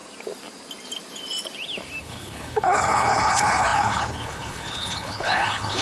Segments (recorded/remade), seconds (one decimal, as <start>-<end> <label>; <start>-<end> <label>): 0.0-2.0 recorded; 2.0-5.8 remade